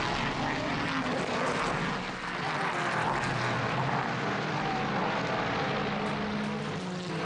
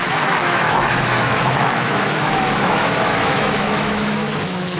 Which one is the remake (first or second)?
second